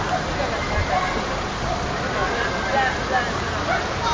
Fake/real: real